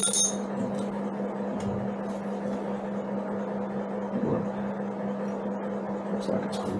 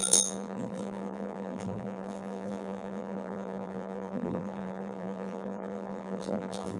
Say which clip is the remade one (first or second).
second